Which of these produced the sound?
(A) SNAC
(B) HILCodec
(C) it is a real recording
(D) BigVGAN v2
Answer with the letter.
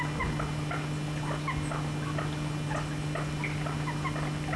C